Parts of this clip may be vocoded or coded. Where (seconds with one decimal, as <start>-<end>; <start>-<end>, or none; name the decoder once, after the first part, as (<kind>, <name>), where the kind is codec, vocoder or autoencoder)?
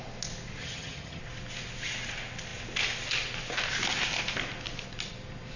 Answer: 0.6-1.2 (vocoder, HiFi-GAN)